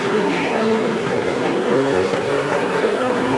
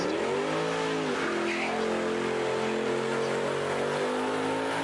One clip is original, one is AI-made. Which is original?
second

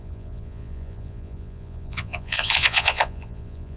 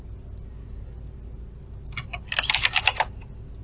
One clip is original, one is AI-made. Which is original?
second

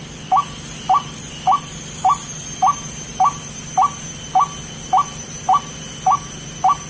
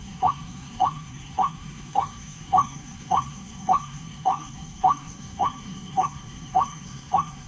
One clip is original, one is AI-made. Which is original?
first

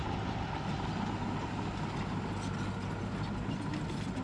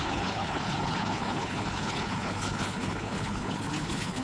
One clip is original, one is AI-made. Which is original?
first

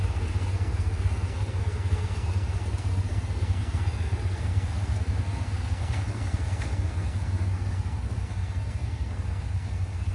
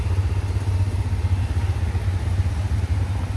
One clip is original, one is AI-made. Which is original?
second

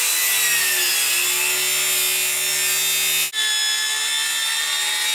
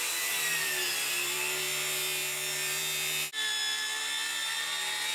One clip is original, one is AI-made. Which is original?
first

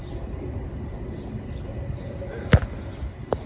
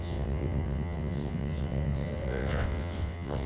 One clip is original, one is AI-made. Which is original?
first